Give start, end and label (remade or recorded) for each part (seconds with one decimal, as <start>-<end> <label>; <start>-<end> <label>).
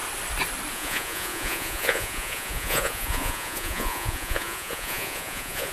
0.0-0.7 recorded; 0.7-5.7 remade